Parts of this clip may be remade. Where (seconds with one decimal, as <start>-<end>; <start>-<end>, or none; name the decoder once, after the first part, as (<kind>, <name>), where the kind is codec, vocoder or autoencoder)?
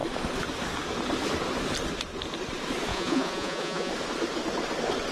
2.9-3.9 (vocoder, Vocos)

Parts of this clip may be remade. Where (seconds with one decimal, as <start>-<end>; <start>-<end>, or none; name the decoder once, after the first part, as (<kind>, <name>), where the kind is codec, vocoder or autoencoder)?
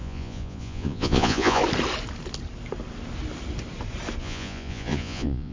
0.0-1.6 (vocoder, Vocos); 4.2-5.5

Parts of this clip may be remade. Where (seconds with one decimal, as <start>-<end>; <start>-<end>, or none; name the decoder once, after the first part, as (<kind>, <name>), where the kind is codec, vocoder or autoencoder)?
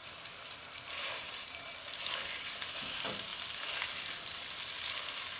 0.0-1.8 (vocoder, BigVGAN v2)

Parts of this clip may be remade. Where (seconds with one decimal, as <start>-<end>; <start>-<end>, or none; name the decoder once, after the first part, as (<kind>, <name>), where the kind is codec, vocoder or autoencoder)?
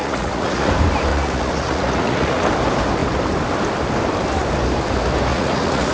0.0-0.7 (vocoder, Vocos); 1.1-2.4; 5.3-5.9